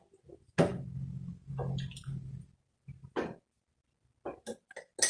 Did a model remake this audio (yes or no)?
no